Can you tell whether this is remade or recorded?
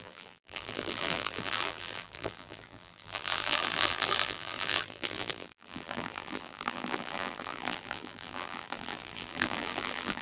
remade